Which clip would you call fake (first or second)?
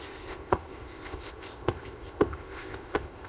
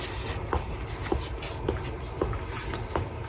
first